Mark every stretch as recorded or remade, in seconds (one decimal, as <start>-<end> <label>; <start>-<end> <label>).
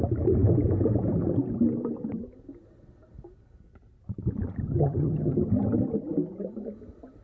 0.0-4.6 recorded; 4.6-5.5 remade; 5.5-7.2 recorded